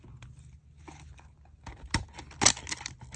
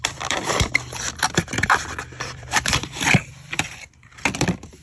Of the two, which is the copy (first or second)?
second